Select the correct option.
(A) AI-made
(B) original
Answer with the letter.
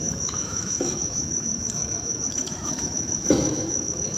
A